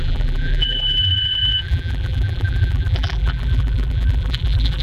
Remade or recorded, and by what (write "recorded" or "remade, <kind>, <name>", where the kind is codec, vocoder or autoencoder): remade, vocoder, BigVGAN v2